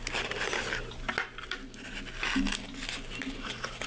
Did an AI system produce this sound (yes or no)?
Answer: no